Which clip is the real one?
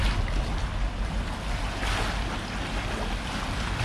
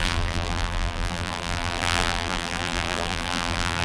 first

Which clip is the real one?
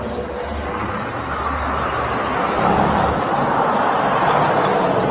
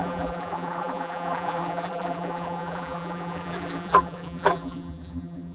first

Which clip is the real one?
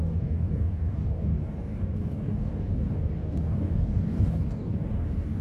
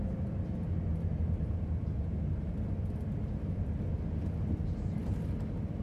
second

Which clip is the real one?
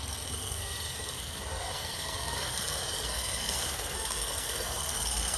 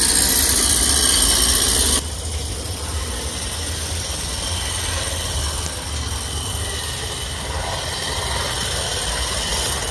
second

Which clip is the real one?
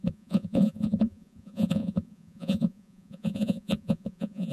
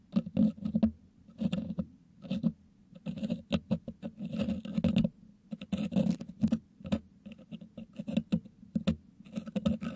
second